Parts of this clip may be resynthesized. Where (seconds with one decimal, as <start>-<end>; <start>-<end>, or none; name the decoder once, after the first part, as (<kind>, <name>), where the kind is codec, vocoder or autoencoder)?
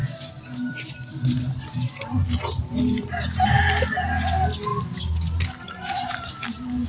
1.1-3.6 (vocoder, BigVGAN v2); 4.7-6.3